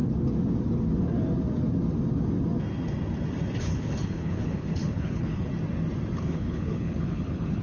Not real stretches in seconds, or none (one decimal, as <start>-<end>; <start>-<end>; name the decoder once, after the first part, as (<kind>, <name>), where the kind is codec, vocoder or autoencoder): 3.6-5.5 (codec, HILCodec); 6.2-7.6